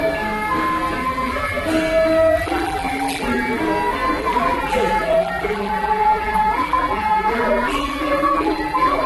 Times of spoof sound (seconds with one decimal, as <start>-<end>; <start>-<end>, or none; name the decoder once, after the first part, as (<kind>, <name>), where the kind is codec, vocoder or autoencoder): 1.0-1.6 (vocoder, BigVGAN v2); 2.3-3.6; 4.2-9.1